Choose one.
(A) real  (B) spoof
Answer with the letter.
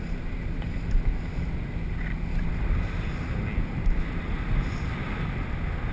A